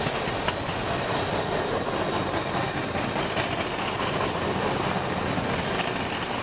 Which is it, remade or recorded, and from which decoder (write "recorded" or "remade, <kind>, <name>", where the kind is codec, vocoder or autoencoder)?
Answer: recorded